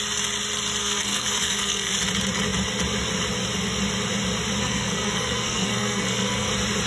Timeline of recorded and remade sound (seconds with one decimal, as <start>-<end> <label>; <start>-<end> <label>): 0.0-0.8 recorded; 0.8-1.9 remade; 1.9-4.6 recorded; 4.6-6.5 remade; 6.5-6.9 recorded